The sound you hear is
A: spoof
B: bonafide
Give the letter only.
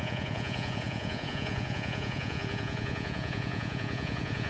A